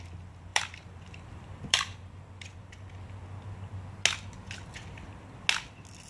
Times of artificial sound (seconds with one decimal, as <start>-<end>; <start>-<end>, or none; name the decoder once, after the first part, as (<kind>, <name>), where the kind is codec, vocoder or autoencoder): 0.5-2.7 (vocoder, BigVGAN v2)